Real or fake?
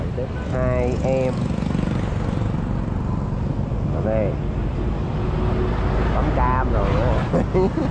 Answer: real